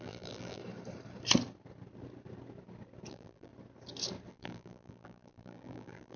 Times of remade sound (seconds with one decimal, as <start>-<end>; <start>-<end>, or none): 0.0-0.6; 3.1-3.5; 4.3-6.2